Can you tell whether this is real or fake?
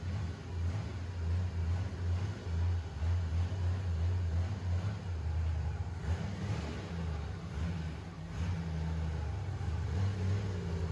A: real